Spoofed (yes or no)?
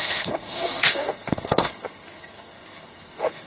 yes